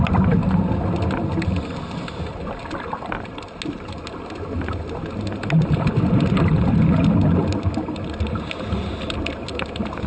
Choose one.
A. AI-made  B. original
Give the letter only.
B